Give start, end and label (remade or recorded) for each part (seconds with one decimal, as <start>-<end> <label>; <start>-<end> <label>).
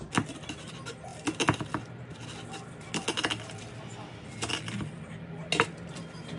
0.0-6.4 recorded